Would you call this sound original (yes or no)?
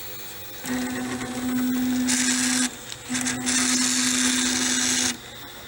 yes